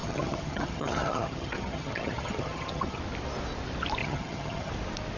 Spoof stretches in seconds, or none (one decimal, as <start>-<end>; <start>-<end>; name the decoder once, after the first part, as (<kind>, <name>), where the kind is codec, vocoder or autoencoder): 0.0-3.0 (vocoder, HiFi-GAN); 4.0-4.7